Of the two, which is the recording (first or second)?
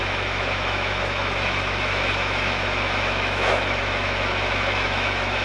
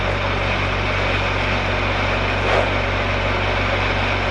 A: second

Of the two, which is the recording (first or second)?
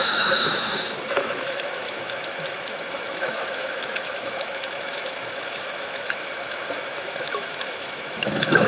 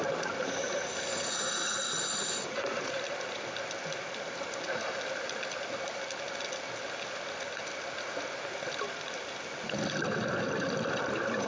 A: second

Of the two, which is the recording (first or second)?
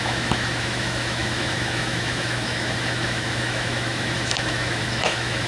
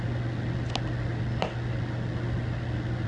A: second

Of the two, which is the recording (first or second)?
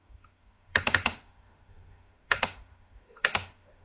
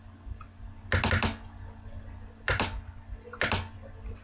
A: second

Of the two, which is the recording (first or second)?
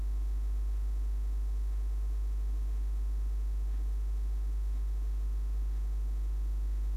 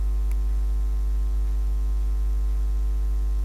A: second